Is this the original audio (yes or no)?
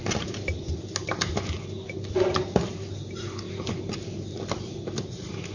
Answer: yes